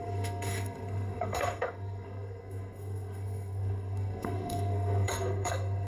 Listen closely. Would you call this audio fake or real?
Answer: fake